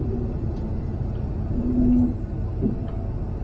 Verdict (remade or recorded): recorded